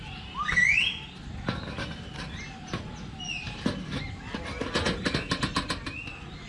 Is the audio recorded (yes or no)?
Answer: yes